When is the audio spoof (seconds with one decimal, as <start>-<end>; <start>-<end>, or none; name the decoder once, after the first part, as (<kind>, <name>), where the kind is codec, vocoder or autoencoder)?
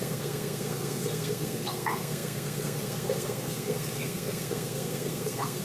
0.0-5.6 (codec, SNAC)